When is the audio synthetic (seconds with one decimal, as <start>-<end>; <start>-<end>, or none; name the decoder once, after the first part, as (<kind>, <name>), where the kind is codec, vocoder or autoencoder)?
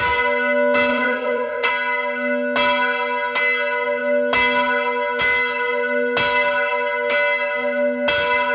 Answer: 0.9-1.7 (vocoder, WaveNeXt)